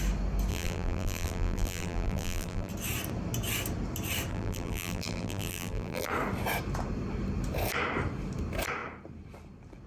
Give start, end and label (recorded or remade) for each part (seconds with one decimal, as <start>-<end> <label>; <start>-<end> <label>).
0.0-0.5 recorded; 0.5-2.7 remade; 2.7-4.3 recorded; 4.3-6.1 remade; 6.1-9.9 recorded